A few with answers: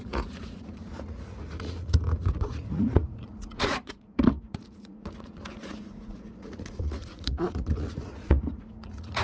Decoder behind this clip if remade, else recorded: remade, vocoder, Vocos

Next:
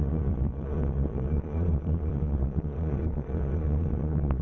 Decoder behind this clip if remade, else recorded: remade, vocoder, Vocos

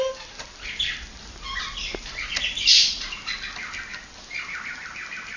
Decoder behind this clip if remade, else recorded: recorded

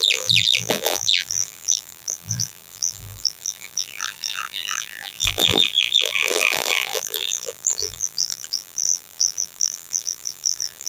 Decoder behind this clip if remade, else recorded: remade, vocoder, BigVGAN v2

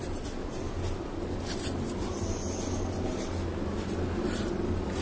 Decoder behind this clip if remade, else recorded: recorded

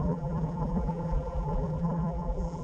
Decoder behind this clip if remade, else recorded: remade, vocoder, BigVGAN v2